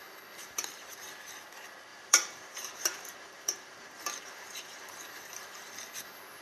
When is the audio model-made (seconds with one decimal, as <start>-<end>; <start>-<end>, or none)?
0.4-1.0; 1.9-5.7